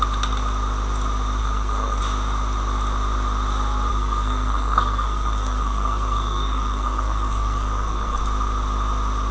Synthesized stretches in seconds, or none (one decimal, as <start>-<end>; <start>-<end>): 1.4-2.0; 3.9-8.2